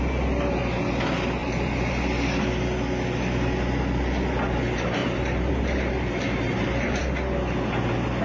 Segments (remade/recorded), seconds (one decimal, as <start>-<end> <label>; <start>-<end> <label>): 0.0-1.4 recorded; 1.4-1.9 remade; 1.9-5.0 recorded; 5.0-7.0 remade; 7.0-8.2 recorded